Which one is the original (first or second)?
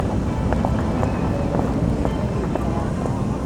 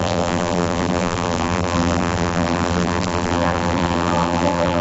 first